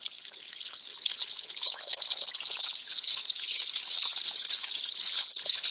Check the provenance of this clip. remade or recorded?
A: remade